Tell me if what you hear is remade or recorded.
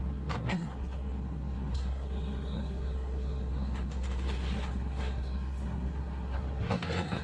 remade